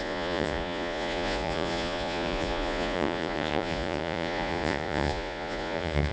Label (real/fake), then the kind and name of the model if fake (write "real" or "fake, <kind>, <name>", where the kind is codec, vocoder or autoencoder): fake, vocoder, Vocos